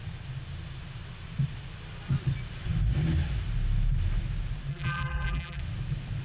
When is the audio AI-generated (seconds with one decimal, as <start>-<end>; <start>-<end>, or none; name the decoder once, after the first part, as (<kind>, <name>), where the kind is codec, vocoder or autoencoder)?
4.7-5.6 (vocoder, BigVGAN v2)